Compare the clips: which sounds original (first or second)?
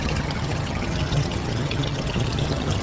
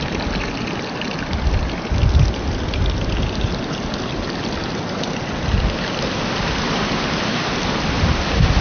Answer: second